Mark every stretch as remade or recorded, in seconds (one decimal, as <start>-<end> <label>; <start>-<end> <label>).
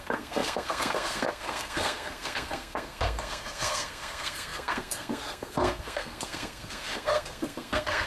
0.0-8.1 remade